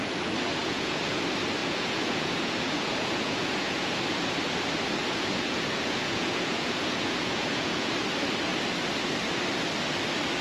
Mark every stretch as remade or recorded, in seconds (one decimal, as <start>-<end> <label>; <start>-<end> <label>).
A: 0.0-0.6 recorded; 0.6-1.1 remade; 1.1-1.6 recorded; 1.6-3.9 remade; 3.9-5.0 recorded; 5.0-7.9 remade; 7.9-10.4 recorded